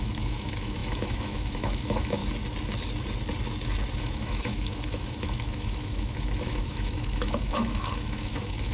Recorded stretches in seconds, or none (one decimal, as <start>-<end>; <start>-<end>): 2.2-4.0